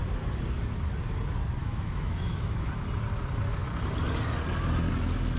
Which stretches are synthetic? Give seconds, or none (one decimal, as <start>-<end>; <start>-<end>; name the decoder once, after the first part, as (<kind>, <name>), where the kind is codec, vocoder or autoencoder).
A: 1.6-2.7 (autoencoder, DAC-VAE)